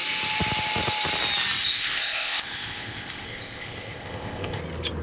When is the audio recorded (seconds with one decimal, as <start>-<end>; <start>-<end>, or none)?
0.0-1.6; 4.6-5.0